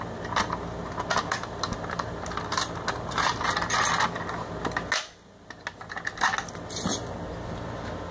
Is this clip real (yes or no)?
yes